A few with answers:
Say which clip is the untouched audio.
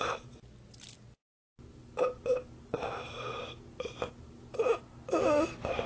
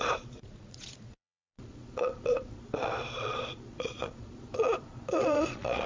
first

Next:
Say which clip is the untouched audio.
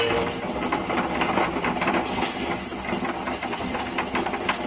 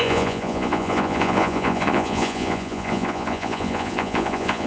first